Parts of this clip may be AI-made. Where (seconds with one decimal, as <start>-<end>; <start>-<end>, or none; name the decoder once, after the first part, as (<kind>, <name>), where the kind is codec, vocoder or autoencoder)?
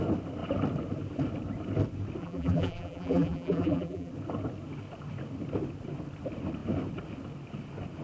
2.2-4.1 (vocoder, BigVGAN v2)